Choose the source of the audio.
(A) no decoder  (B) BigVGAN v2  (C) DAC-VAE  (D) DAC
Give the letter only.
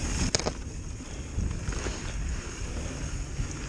A